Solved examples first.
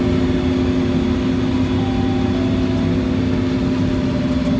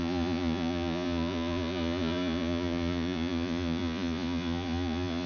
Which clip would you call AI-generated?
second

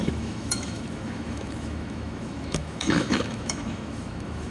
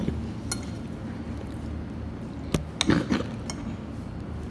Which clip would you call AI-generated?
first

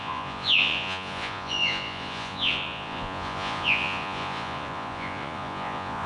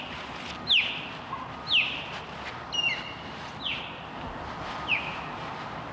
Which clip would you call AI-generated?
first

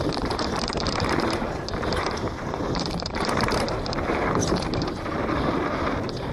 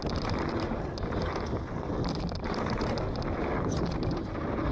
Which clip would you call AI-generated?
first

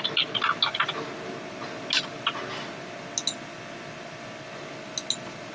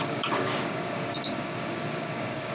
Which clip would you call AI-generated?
second